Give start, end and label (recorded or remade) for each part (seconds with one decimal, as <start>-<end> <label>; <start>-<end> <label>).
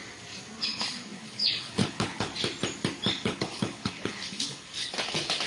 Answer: 0.0-0.6 recorded; 0.6-2.3 remade; 2.3-3.1 recorded; 3.1-5.5 remade